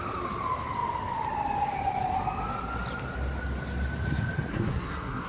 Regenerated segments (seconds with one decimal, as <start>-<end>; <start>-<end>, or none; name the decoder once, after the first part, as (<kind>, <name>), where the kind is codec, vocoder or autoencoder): 4.5-5.3 (codec, SNAC)